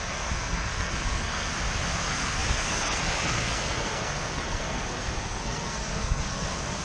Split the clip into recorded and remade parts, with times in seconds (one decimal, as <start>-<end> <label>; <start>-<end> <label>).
0.0-1.5 remade; 1.5-2.0 recorded; 2.0-6.8 remade

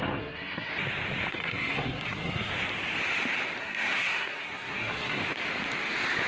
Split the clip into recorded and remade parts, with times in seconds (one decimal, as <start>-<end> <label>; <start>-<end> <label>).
0.0-0.7 remade; 0.7-1.3 recorded; 1.3-2.5 remade; 2.5-3.6 recorded; 3.6-5.2 remade; 5.2-6.3 recorded

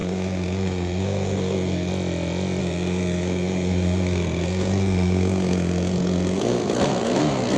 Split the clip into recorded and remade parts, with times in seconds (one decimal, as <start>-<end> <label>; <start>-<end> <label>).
0.0-1.9 remade; 1.9-2.6 recorded; 2.6-7.6 remade

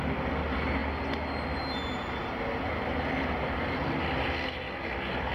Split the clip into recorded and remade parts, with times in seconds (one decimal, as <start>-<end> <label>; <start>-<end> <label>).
0.0-5.3 recorded

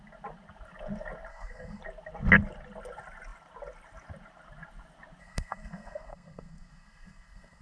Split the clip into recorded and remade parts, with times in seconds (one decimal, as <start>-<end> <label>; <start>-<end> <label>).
0.0-1.3 recorded; 1.3-1.8 remade; 1.8-5.2 recorded; 5.2-7.6 remade

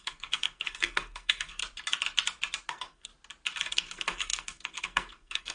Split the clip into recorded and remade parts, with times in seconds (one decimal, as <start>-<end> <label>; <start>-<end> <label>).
0.0-1.6 remade; 1.6-2.7 recorded; 2.7-3.1 remade; 3.1-3.7 recorded; 3.7-5.5 remade